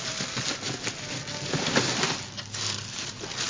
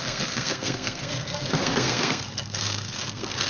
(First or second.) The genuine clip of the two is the first